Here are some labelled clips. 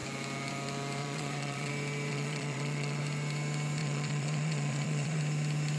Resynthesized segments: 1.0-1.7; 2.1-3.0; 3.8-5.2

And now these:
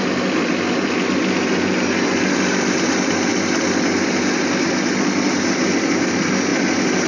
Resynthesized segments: none

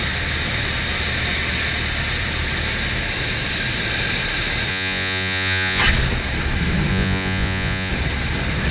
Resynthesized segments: 4.7-5.8; 6.9-7.9